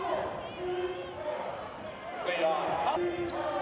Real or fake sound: real